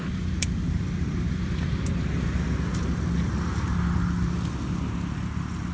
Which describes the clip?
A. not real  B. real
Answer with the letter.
B